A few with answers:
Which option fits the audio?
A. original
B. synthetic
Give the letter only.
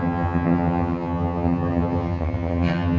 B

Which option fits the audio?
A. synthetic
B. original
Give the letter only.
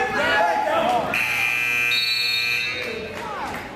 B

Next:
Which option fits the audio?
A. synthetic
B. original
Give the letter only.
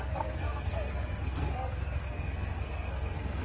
A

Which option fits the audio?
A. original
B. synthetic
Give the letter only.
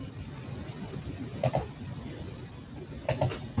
A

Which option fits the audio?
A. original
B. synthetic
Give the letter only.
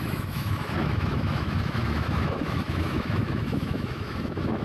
B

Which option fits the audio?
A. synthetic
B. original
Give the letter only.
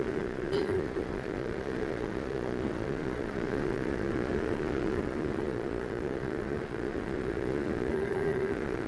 A